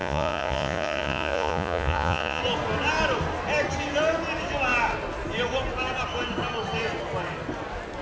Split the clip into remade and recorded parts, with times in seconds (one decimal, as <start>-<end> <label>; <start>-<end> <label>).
0.0-2.4 remade; 2.4-8.0 recorded